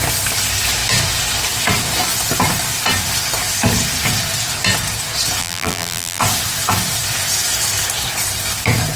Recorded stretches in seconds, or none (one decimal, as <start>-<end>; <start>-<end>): 0.0-5.4; 6.2-9.0